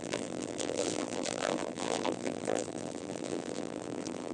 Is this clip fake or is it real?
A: fake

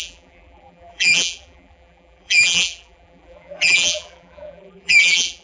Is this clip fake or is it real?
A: fake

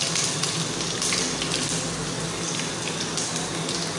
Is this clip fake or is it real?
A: fake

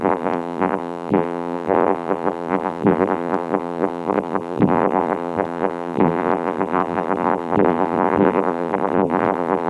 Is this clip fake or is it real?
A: fake